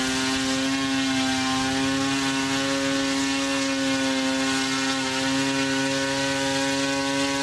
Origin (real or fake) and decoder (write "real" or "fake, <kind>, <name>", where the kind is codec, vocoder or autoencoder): real